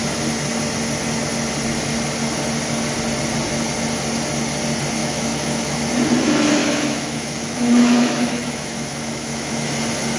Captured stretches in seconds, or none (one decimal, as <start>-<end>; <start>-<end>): 0.0-5.0; 5.8-6.6; 9.7-10.2